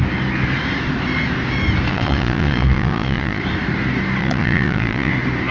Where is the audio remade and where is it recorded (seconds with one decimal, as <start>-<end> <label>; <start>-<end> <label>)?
0.0-1.9 recorded; 1.9-3.4 remade; 3.4-4.2 recorded; 4.2-5.1 remade; 5.1-5.5 recorded